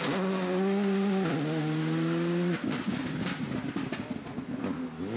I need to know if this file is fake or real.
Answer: real